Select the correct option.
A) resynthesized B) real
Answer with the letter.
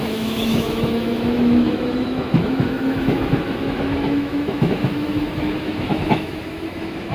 A